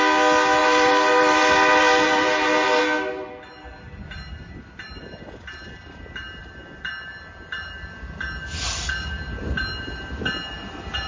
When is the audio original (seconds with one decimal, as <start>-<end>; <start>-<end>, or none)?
0.0-0.6; 2.8-6.4; 6.9-11.1